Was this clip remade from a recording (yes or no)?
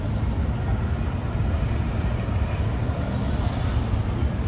no